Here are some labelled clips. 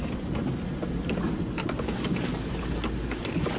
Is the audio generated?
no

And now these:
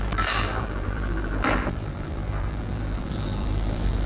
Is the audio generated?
yes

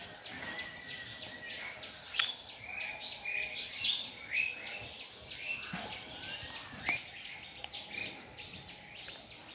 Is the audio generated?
no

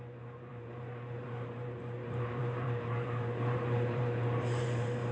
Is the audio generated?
yes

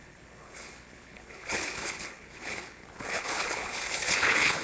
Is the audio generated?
yes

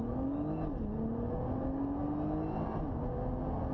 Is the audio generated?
no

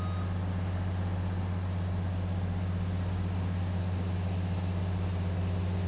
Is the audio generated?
no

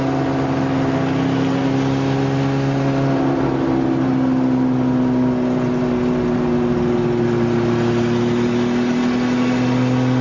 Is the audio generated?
no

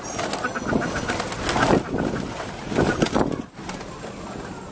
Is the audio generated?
no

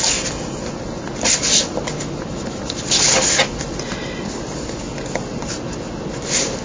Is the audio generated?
no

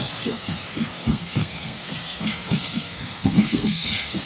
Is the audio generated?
yes